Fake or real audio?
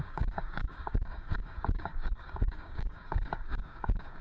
fake